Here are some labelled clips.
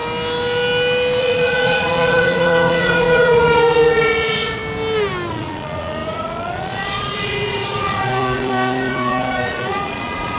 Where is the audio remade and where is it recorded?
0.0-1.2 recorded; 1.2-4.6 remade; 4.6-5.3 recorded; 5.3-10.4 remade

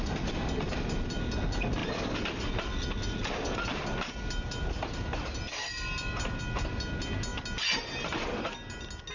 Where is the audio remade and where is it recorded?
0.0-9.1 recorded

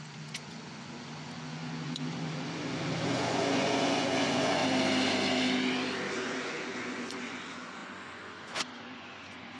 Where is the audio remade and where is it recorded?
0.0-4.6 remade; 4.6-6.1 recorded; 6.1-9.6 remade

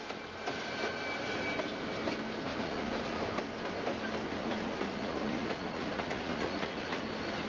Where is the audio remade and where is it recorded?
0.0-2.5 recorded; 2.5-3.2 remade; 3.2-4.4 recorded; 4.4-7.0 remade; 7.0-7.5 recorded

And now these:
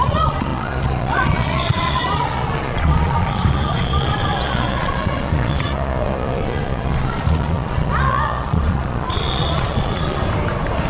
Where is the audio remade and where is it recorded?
0.0-10.2 remade; 10.2-10.9 recorded